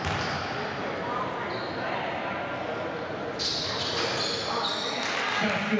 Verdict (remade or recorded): recorded